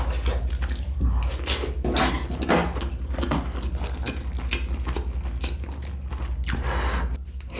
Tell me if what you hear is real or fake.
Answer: real